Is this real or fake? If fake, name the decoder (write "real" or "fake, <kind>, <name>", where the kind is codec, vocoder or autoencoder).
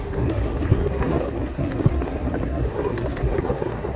fake, codec, SNAC